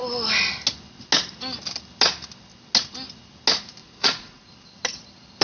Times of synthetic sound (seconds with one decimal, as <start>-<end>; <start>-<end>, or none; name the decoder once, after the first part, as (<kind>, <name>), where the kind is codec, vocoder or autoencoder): 3.8-4.5 (vocoder, Vocos)